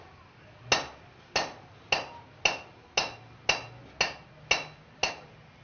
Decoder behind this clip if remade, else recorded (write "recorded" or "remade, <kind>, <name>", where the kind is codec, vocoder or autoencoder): recorded